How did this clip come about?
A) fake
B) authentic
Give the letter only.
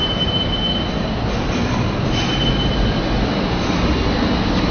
B